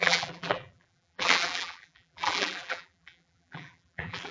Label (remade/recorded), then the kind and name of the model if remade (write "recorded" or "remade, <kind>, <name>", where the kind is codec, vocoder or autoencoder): remade, vocoder, BigVGAN v2